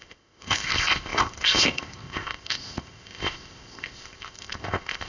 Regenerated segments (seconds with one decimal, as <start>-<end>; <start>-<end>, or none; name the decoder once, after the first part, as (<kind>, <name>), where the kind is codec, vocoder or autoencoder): 0.0-5.1 (codec, ZipCodec)

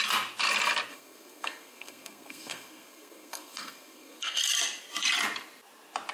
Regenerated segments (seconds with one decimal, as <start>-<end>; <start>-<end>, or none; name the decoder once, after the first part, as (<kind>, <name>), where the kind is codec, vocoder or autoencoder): 0.9-4.4 (codec, SNAC)

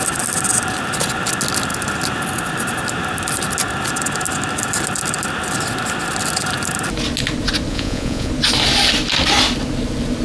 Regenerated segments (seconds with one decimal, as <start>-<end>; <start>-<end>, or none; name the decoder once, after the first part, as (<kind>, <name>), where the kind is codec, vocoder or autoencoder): 7.7-8.3 (vocoder, Vocos)